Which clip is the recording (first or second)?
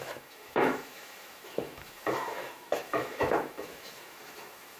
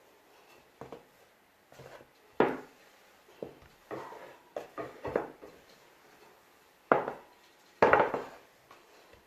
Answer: second